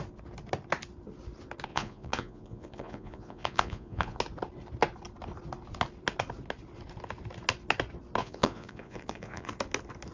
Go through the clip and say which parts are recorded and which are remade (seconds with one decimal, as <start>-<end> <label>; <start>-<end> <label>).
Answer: 0.0-1.7 recorded; 1.7-4.2 remade; 4.2-8.2 recorded; 8.2-9.5 remade; 9.5-10.1 recorded